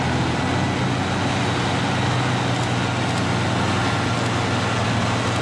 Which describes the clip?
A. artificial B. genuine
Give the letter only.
B